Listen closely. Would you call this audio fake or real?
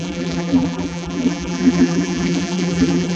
fake